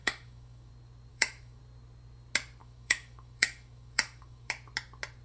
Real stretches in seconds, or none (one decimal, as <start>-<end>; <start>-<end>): 0.7-1.1; 1.6-2.6; 4.5-5.2